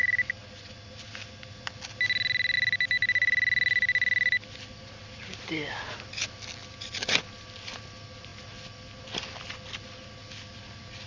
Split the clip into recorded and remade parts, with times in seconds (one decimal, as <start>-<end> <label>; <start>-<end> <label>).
0.0-11.1 recorded